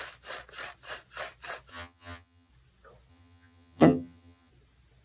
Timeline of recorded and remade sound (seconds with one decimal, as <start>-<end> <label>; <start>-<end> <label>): 0.0-1.7 recorded; 1.7-2.5 remade; 2.5-3.1 recorded; 3.1-4.5 remade; 4.5-5.0 recorded